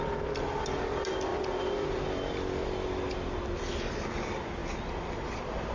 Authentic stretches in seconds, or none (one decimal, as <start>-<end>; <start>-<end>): 0.0-5.7